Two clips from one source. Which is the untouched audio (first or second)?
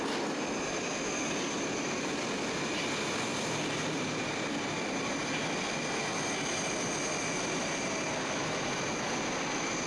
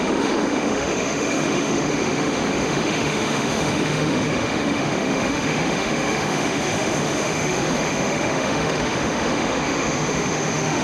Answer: first